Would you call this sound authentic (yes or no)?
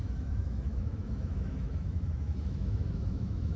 no